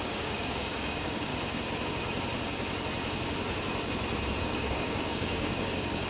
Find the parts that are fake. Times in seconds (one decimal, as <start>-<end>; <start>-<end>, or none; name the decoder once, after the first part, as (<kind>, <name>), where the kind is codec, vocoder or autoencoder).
0.0-1.3 (codec, DAC); 4.4-6.1